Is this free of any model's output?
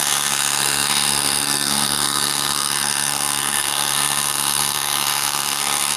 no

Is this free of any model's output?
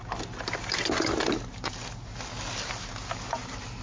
yes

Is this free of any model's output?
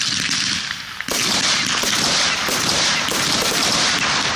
yes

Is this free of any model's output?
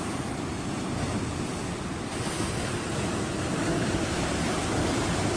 yes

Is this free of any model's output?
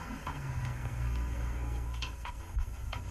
no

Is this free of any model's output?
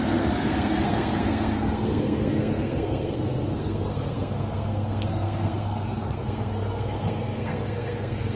no